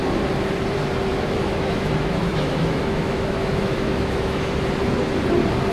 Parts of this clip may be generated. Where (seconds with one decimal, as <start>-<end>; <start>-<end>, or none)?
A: 1.1-4.5